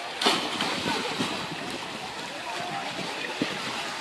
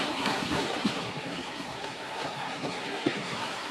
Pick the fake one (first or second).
second